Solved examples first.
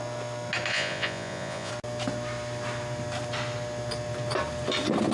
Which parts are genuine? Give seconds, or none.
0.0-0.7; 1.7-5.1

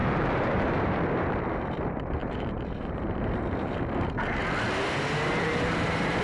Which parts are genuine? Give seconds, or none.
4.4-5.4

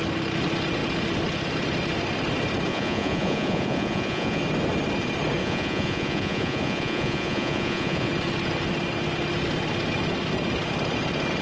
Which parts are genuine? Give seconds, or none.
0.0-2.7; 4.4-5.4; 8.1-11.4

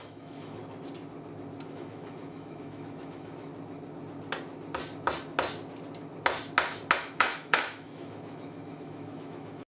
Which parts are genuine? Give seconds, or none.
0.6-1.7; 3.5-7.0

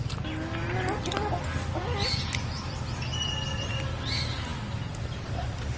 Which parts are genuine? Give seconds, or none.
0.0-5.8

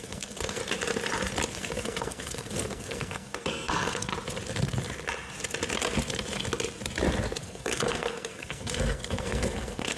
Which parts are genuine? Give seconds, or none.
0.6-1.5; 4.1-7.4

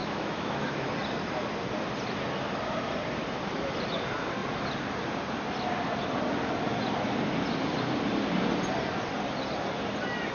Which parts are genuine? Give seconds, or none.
0.9-10.3